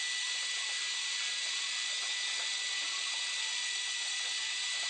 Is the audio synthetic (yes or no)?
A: no